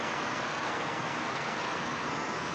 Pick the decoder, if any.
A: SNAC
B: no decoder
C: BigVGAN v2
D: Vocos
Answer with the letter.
A